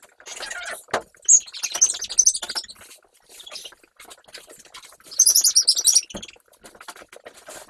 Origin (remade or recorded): recorded